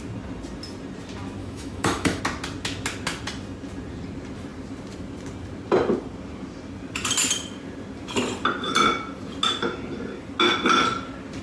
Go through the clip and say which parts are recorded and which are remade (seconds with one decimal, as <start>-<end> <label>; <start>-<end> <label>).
0.0-1.4 recorded; 1.4-2.2 remade; 2.2-11.4 recorded